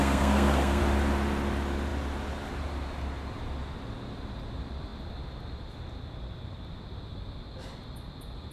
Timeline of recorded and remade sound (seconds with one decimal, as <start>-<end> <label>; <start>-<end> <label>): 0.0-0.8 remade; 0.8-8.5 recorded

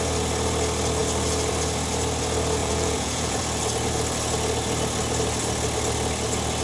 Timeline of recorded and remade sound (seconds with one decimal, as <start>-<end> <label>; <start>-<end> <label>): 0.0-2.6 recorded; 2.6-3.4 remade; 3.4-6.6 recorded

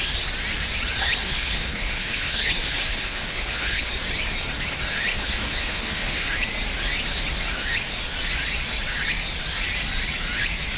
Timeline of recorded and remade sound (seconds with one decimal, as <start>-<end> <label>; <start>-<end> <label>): 0.0-1.2 recorded; 1.2-3.9 remade; 3.9-5.1 recorded; 5.1-6.3 remade; 6.3-10.8 recorded